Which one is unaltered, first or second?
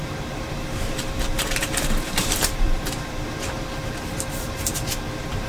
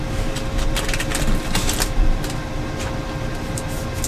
second